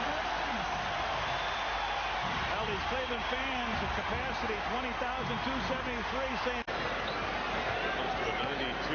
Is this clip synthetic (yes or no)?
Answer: no